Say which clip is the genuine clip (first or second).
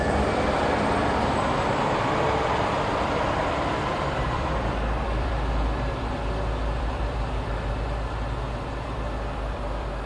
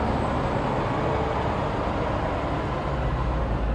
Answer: second